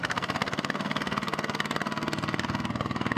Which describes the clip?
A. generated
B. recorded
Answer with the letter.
A